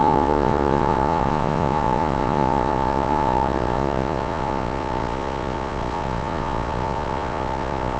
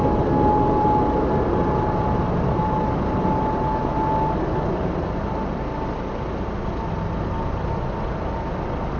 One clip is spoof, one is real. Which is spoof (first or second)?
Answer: first